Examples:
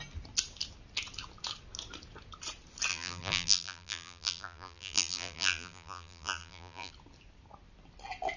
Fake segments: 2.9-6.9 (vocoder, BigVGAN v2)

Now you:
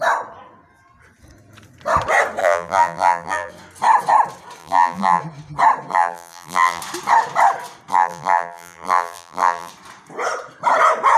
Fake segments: 2.4-3.5 (vocoder, BigVGAN v2); 4.6-5.2; 5.9-6.8; 7.9-9.7

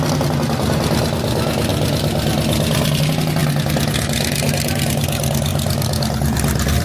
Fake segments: none

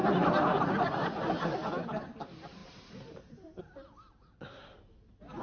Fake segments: 2.6-3.6 (vocoder, BigVGAN v2)

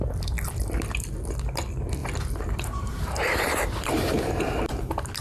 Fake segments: 2.0-4.7 (vocoder, BigVGAN v2)

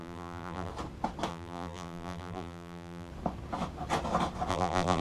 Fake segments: 0.0-0.7 (vocoder, BigVGAN v2); 1.3-3.1; 4.5-5.0